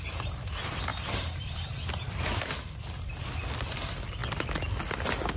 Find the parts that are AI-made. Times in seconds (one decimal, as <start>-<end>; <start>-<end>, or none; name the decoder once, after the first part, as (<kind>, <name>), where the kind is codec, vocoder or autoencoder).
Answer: 0.9-1.7 (vocoder, BigVGAN v2)